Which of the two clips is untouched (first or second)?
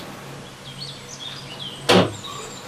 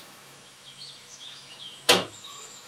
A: first